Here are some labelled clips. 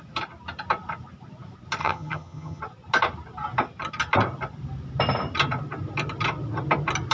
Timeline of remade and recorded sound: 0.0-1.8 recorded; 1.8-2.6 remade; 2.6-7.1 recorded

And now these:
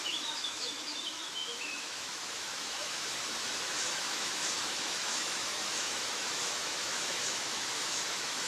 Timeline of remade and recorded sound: 0.0-8.5 remade

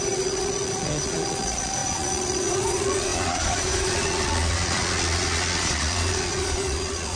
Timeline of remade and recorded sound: 0.0-7.2 remade

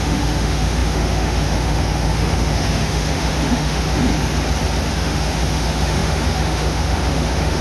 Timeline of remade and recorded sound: 0.0-4.1 remade; 4.1-4.9 recorded; 4.9-7.6 remade